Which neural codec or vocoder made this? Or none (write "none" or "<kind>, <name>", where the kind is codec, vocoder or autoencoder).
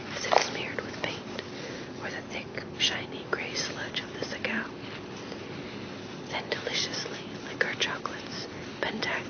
none